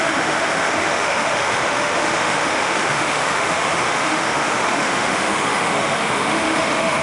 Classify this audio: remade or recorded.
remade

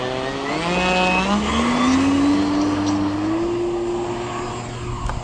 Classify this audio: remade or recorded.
recorded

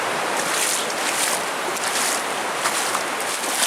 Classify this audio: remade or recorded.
recorded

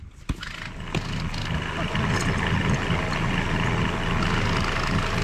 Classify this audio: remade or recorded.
recorded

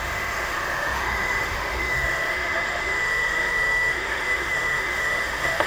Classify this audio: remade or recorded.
remade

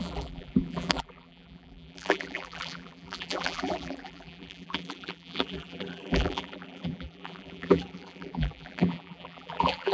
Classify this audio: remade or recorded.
remade